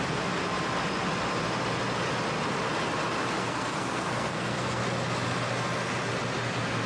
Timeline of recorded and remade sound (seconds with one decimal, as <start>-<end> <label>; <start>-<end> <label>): 0.0-3.4 recorded; 3.4-4.8 remade; 4.8-6.9 recorded